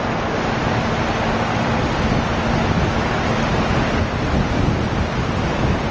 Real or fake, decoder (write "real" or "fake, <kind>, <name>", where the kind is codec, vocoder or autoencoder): real